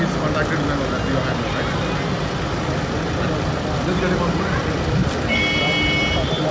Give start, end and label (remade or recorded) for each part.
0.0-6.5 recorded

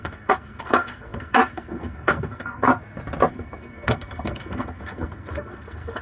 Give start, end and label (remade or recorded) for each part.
0.0-2.7 remade; 2.7-3.3 recorded; 3.3-6.0 remade

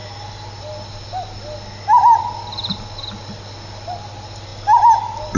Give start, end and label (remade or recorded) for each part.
0.0-5.4 recorded

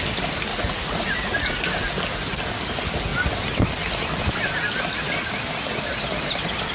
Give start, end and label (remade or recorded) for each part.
0.0-0.5 recorded; 0.5-1.9 remade; 1.9-6.7 recorded

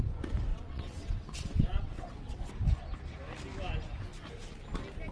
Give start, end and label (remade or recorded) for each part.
0.0-0.5 recorded; 0.5-2.5 remade; 2.5-5.1 recorded

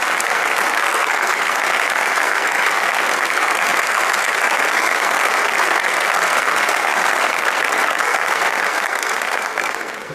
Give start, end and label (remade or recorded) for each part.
0.0-10.1 remade

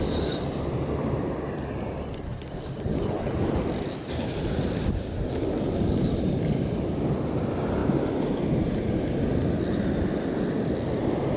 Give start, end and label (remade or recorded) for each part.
0.0-11.4 recorded